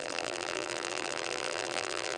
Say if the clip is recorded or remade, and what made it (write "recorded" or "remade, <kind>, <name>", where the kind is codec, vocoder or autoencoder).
remade, vocoder, BigVGAN v2